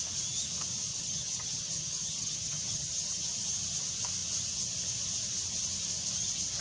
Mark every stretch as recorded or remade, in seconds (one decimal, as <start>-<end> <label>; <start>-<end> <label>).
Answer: 0.0-0.9 recorded; 0.9-3.3 remade; 3.3-6.6 recorded